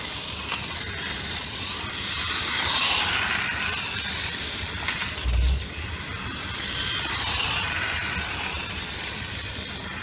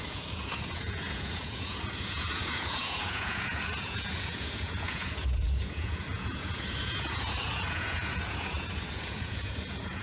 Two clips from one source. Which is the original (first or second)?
first